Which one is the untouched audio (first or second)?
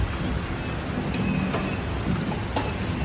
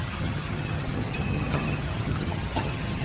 first